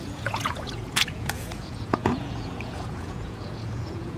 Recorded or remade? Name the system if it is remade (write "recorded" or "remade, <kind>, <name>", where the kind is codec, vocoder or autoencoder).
remade, vocoder, Vocos